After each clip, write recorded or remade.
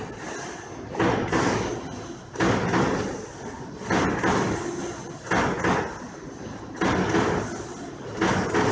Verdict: recorded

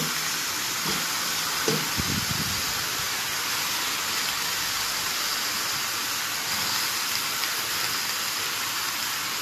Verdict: recorded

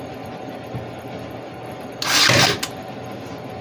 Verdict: recorded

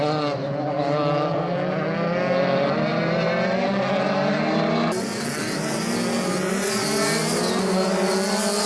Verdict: recorded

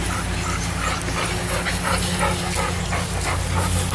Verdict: recorded